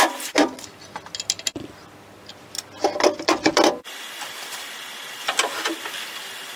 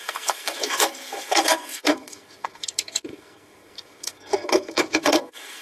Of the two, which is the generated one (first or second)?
second